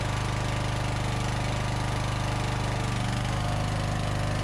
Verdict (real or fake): real